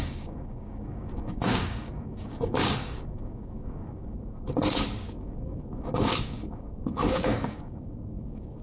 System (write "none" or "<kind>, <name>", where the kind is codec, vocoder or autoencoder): codec, DAC